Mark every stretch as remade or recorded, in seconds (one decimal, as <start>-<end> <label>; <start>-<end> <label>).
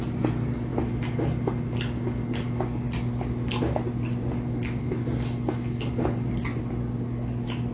0.0-7.7 recorded